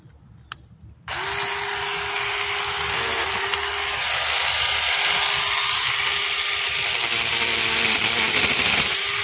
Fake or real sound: real